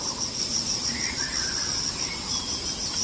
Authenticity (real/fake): real